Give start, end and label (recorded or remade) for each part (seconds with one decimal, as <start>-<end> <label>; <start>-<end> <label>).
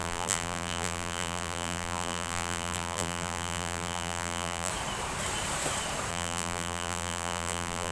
0.0-4.7 remade; 4.7-6.1 recorded; 6.1-7.9 remade